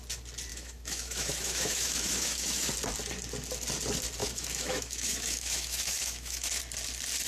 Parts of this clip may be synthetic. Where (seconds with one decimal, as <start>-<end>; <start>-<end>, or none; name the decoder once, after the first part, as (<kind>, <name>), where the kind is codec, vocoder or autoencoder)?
0.5-2.7 (autoencoder, DAC-VAE); 4.2-6.6